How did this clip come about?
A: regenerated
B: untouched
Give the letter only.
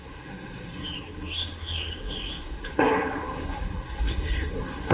A